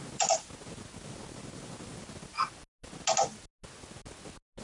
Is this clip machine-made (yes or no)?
no